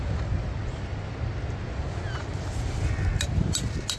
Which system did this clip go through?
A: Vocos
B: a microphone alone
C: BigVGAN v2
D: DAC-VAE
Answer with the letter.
B